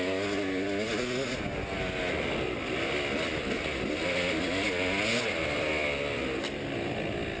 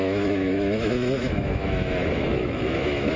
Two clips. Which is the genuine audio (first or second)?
first